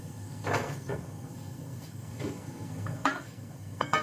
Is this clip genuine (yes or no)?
no